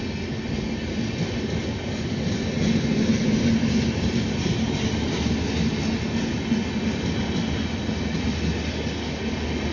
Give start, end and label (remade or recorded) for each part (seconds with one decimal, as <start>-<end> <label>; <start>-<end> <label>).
0.0-9.7 recorded